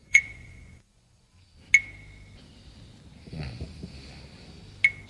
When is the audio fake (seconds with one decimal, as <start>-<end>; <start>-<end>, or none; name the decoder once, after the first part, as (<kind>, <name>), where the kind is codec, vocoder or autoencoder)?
0.0-1.4 (vocoder, Vocos)